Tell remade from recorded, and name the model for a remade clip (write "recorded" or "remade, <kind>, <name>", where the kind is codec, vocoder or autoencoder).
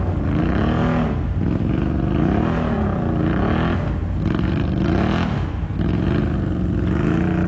recorded